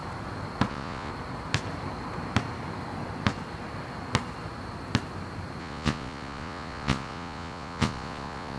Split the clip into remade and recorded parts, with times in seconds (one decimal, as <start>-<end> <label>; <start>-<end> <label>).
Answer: 0.0-0.7 recorded; 0.7-1.1 remade; 1.1-5.6 recorded; 5.6-8.6 remade